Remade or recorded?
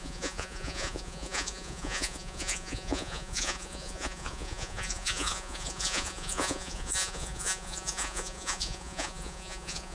remade